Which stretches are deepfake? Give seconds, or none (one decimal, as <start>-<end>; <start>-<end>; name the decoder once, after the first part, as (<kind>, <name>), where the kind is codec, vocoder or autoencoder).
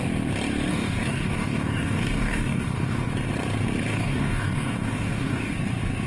0.7-3.1 (codec, DAC); 3.9-5.5